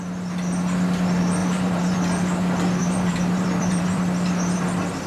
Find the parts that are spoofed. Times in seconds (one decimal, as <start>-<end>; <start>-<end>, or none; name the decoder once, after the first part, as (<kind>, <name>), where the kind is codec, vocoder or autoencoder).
1.4-2.0 (vocoder, BigVGAN v2); 2.8-4.0